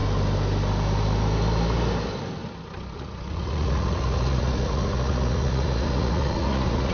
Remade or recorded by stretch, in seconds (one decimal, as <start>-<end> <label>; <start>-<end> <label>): 0.0-2.9 recorded; 2.9-6.9 remade